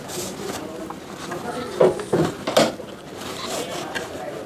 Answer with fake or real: real